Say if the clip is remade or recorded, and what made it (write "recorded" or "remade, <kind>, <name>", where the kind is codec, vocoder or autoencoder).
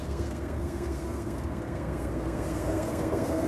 remade, codec, SNAC